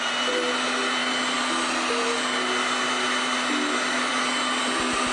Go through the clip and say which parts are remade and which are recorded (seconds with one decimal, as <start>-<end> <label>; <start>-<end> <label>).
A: 0.0-5.1 recorded